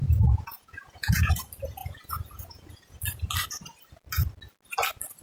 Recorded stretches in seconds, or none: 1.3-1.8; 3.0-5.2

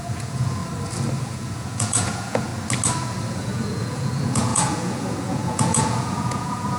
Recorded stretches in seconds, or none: 0.6-1.2; 2.5-3.3

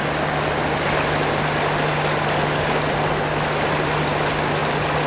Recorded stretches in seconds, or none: 0.0-5.1

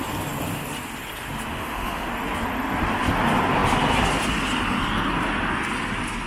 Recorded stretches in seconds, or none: 0.0-1.5; 2.1-6.3

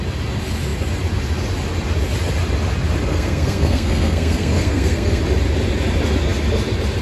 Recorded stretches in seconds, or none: 0.0-3.1; 5.2-7.0

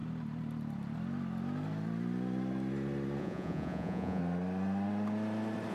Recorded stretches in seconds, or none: 0.0-3.2; 4.2-5.7

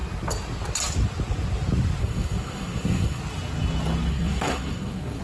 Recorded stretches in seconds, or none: 0.0-2.0; 3.2-4.1

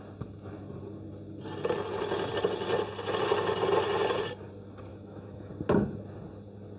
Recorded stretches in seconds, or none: 0.0-4.9; 5.5-6.8